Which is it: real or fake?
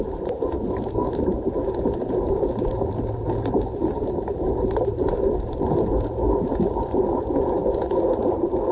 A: fake